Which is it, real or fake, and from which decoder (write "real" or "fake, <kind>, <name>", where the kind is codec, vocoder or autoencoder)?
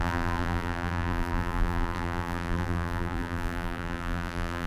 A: fake, vocoder, BigVGAN v2